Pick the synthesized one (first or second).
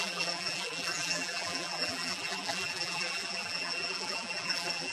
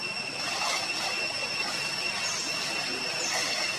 first